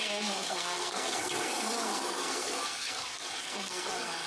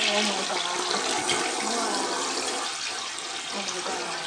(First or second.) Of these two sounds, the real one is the second